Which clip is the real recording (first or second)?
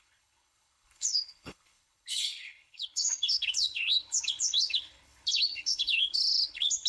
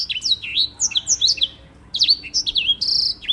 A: second